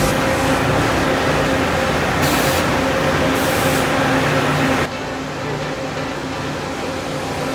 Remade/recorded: recorded